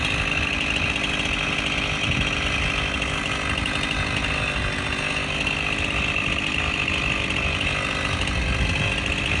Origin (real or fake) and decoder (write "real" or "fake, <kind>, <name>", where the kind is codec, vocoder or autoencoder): real